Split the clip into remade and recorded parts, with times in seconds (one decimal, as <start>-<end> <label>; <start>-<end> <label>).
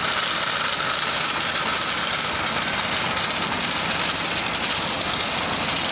0.0-5.9 recorded